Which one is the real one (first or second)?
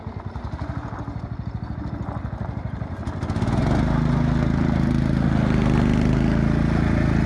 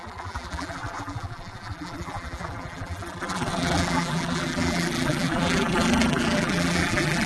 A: first